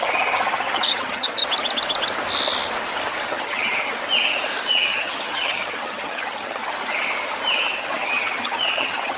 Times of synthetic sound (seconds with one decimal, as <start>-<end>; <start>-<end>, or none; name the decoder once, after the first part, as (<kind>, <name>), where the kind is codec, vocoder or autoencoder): 0.0-1.4 (vocoder, HiFi-GAN); 3.3-3.9; 4.7-6.6; 7.8-9.2